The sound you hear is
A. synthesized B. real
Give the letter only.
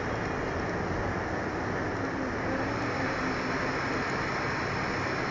B